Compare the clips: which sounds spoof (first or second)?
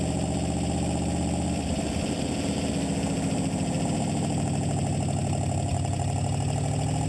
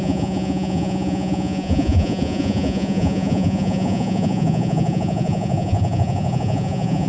second